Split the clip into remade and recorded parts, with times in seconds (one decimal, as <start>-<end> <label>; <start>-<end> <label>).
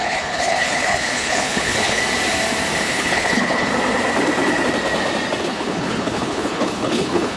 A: 0.0-2.0 remade; 2.0-2.8 recorded; 2.8-3.7 remade; 3.7-5.4 recorded; 5.4-7.4 remade